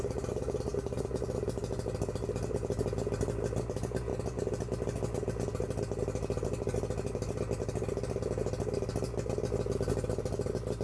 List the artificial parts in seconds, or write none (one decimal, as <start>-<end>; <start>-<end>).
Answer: none